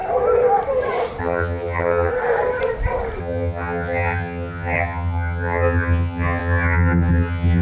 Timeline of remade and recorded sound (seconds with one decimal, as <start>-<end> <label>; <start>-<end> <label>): 0.0-1.2 recorded; 1.2-2.1 remade; 2.1-3.2 recorded; 3.2-7.6 remade